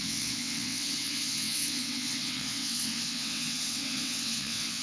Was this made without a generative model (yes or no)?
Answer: no